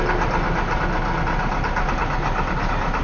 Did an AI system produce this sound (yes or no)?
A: no